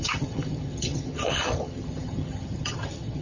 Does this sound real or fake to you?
fake